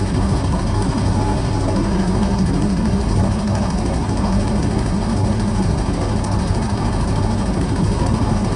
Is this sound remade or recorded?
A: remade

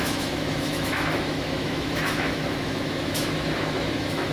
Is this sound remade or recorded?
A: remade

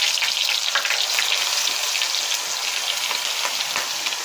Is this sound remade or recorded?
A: recorded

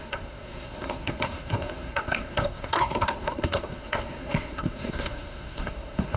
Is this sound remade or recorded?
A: remade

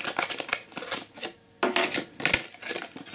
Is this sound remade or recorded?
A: recorded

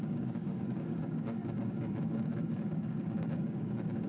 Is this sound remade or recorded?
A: remade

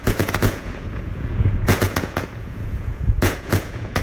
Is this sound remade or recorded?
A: remade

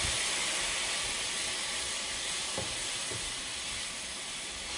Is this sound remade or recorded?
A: recorded